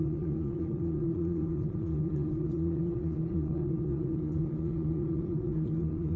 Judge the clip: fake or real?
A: fake